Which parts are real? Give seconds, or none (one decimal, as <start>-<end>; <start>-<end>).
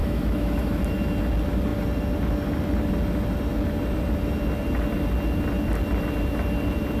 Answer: 0.8-7.0